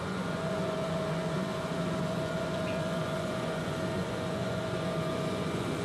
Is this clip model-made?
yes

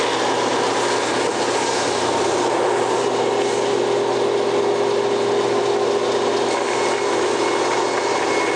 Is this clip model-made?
no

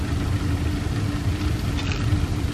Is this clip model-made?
no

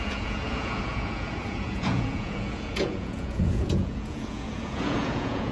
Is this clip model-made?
yes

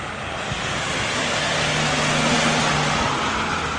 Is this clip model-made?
no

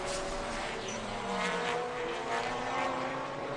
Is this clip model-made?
yes